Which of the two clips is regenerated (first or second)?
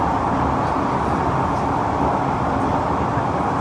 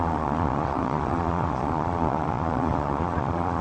second